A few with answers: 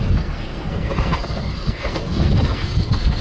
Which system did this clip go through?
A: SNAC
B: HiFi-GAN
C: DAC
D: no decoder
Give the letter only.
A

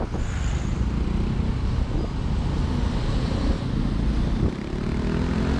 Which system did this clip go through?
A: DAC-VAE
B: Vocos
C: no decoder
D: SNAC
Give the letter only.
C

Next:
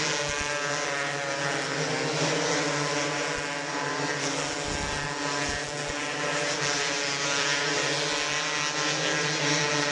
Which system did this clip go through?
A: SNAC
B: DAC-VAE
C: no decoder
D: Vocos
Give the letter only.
C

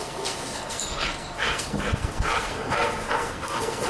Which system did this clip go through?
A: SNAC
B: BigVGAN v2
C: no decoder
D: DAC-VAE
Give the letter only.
A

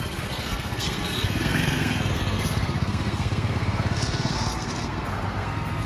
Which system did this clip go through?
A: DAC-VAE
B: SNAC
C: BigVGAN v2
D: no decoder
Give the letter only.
B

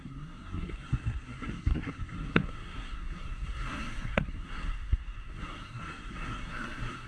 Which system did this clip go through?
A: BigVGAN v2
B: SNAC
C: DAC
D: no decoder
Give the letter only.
B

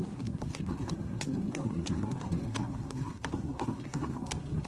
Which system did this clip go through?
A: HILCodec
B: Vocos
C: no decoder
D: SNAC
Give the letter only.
D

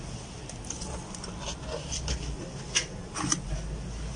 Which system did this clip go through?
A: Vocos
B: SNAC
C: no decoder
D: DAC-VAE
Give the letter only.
C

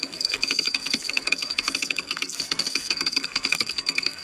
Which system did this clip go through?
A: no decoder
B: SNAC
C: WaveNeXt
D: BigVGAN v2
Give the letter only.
B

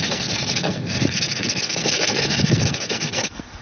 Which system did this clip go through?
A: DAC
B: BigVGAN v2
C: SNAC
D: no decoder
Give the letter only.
C